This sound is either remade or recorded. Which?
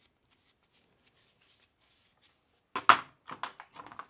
recorded